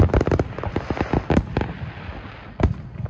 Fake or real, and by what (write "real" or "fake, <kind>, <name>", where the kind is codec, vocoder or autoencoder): real